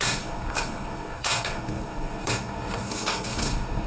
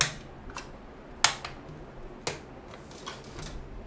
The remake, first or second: first